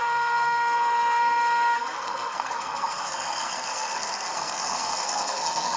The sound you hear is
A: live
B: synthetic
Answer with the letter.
B